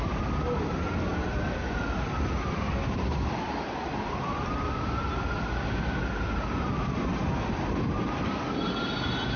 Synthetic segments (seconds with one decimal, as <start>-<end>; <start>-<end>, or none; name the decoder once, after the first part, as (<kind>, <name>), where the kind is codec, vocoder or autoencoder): none